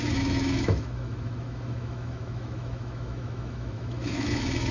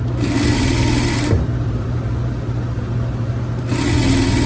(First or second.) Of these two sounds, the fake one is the first